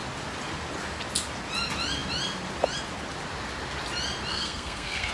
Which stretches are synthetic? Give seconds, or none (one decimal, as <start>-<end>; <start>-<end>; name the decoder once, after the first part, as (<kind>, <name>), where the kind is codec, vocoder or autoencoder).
4.3-5.1 (codec, SNAC)